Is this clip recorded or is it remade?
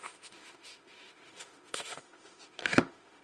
remade